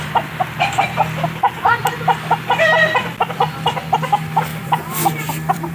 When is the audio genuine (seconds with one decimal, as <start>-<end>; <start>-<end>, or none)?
0.0-4.5

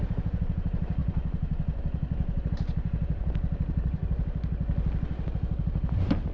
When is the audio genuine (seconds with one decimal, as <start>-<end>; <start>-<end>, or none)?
4.0-5.6

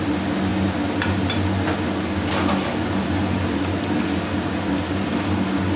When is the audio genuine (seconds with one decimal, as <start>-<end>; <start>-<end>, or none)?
0.0-5.8

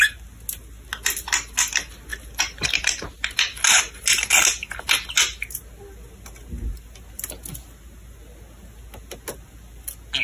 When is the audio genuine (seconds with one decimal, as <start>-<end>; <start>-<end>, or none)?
0.0-10.2

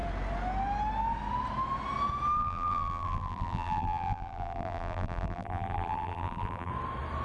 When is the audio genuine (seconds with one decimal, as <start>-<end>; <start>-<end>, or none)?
0.0-2.4; 6.7-7.2

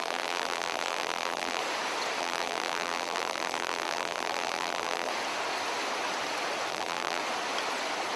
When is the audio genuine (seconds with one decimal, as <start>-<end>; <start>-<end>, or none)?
1.6-2.2; 5.1-6.7; 7.2-8.2

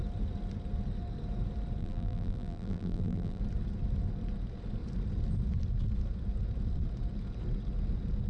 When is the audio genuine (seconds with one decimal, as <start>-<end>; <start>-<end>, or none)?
0.0-1.8; 3.4-8.3